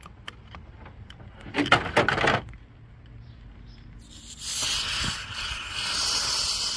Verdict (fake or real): real